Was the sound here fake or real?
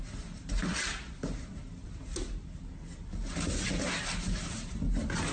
real